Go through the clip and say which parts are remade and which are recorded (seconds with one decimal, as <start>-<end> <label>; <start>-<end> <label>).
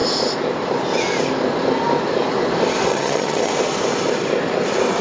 0.0-2.9 recorded; 2.9-3.5 remade; 3.5-5.0 recorded